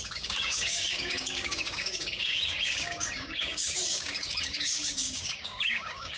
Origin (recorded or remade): remade